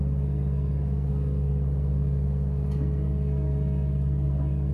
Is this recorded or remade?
remade